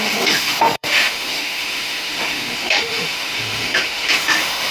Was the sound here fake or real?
fake